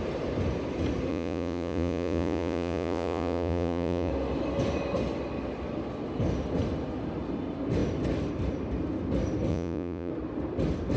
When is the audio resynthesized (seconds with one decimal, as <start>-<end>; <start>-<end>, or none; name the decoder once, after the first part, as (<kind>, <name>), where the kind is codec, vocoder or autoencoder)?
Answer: 1.1-4.1 (vocoder, Vocos); 9.5-10.1